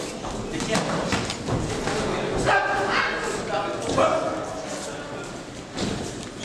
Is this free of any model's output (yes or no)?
yes